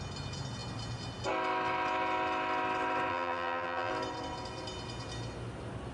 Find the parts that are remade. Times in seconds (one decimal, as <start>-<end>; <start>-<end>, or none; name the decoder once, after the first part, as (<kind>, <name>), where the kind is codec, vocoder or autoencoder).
3.1-3.9 (vocoder, BigVGAN v2)